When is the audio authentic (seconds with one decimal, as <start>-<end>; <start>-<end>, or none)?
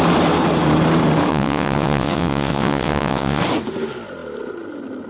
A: 0.0-1.3; 3.4-5.1